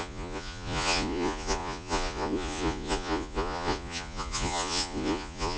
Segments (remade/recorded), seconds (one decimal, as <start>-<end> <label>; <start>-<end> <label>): 0.0-5.6 remade